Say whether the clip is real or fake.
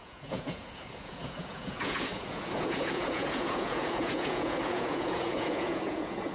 fake